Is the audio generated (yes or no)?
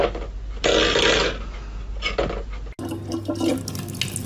no